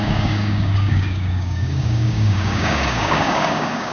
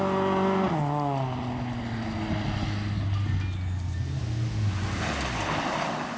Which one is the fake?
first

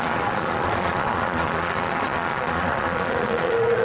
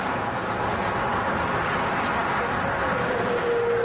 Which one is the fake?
first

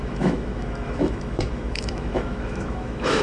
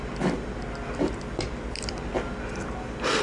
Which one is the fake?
first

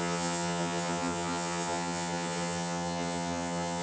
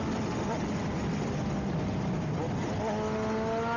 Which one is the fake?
first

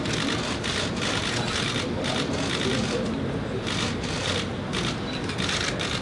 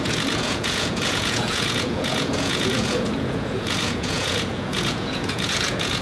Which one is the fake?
second